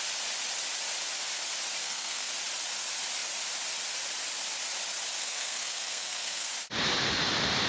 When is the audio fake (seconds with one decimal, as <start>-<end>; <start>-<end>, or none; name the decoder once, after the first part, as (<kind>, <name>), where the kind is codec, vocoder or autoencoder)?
1.8-2.3 (codec, SNAC); 5.2-6.5